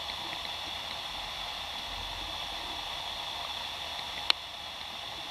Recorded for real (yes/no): yes